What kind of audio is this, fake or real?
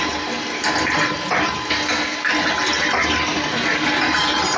real